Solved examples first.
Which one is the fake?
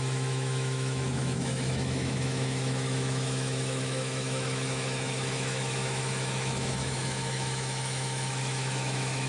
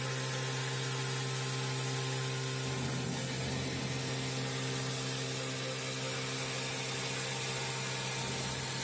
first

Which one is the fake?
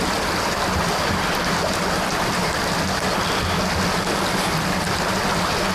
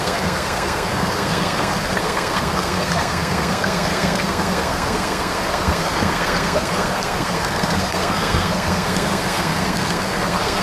second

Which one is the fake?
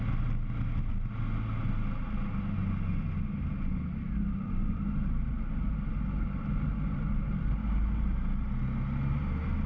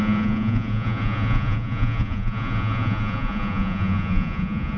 second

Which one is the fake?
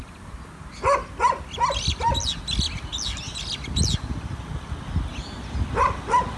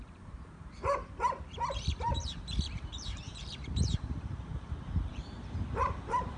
second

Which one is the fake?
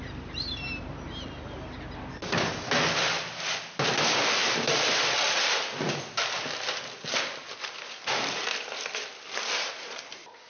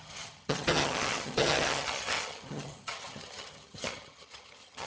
second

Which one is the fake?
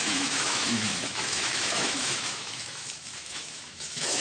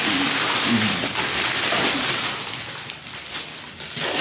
first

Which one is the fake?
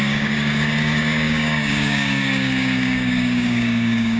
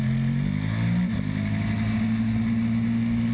first